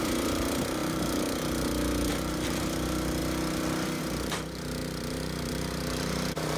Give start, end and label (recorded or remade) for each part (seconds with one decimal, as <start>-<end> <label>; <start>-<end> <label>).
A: 0.0-3.2 remade; 3.2-4.0 recorded; 4.0-6.6 remade